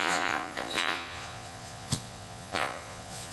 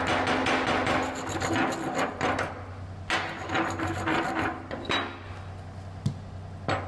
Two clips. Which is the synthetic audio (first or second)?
first